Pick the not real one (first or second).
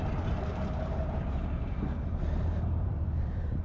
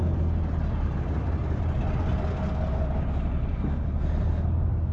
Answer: first